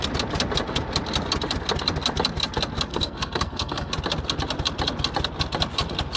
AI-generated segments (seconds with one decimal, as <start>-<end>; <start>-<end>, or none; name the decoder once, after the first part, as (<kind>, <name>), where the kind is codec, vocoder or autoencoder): 2.9-3.9 (codec, SNAC)

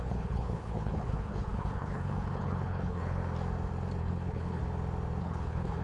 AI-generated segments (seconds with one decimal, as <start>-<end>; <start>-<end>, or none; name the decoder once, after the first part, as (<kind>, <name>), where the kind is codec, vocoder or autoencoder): 0.0-3.2 (codec, HILCodec); 4.0-4.6; 5.2-5.8

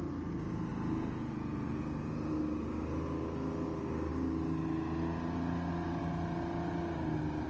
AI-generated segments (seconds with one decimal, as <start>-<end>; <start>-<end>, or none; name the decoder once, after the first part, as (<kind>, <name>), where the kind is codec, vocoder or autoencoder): 0.7-2.3 (vocoder, Vocos)

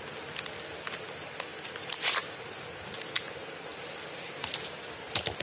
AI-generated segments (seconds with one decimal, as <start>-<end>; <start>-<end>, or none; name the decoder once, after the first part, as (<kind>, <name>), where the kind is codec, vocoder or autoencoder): 1.5-3.2 (vocoder, BigVGAN v2); 3.7-4.8

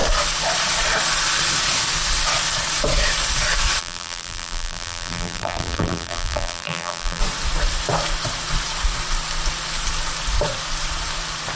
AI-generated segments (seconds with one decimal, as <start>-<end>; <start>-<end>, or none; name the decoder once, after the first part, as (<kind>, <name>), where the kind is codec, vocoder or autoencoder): 3.8-7.2 (vocoder, BigVGAN v2)